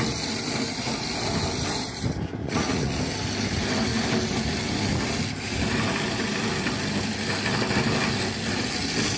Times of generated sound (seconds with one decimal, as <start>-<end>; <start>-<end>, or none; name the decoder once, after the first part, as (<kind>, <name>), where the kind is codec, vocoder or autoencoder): 2.4-3.0 (vocoder, Vocos)

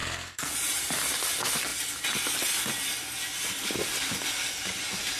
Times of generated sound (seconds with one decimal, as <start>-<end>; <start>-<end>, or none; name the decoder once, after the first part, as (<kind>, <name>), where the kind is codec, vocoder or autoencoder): 0.0-0.5 (codec, SNAC)

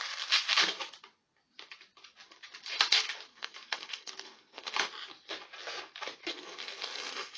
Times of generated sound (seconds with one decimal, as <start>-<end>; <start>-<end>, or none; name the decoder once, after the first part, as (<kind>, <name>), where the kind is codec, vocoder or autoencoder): 3.3-4.7 (codec, SNAC); 6.3-7.4

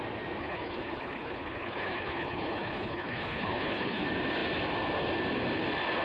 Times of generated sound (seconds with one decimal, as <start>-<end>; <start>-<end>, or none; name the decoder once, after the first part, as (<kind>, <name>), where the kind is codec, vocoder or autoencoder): 0.4-4.0 (codec, HILCodec)

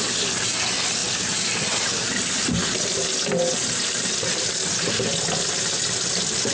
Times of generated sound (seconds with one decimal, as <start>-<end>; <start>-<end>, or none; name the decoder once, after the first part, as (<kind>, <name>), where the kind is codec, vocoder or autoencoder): 1.0-4.9 (vocoder, BigVGAN v2)

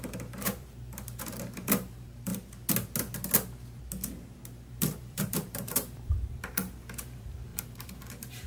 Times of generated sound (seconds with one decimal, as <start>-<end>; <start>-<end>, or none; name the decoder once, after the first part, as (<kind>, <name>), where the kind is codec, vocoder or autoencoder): 0.0-2.3 (vocoder, BigVGAN v2); 4.7-8.5

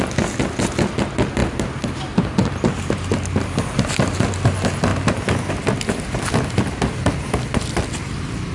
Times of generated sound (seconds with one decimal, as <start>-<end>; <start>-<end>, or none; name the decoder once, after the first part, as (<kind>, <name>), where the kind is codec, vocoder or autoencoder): none

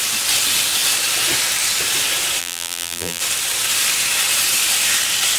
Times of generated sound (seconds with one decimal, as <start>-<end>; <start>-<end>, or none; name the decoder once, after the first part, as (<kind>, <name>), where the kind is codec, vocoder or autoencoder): 2.4-3.2 (vocoder, BigVGAN v2)